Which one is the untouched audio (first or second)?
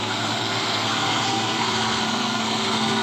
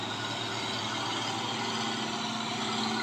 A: second